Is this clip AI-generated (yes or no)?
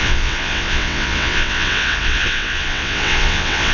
yes